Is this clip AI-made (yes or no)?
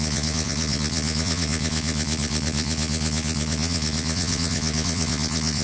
yes